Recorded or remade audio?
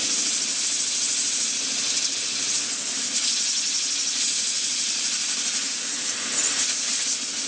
recorded